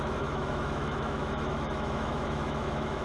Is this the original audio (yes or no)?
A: no